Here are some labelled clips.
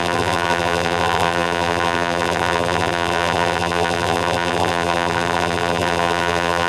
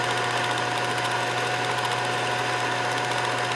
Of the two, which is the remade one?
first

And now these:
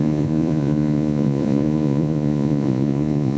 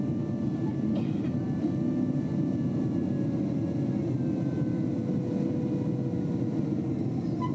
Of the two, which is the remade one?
first